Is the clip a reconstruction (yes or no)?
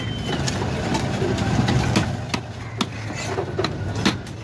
no